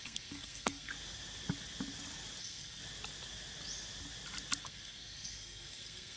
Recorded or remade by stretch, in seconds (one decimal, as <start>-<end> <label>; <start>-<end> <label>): 0.0-0.9 remade; 0.9-2.4 recorded; 2.4-2.8 remade; 2.8-4.6 recorded; 4.6-6.2 remade